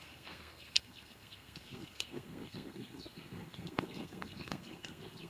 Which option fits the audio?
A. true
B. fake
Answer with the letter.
B